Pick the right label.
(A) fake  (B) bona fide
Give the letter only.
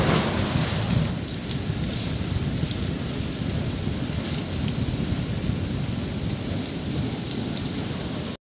B